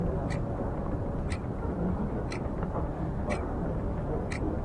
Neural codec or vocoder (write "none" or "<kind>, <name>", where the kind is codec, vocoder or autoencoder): none